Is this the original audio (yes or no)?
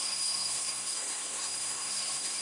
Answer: no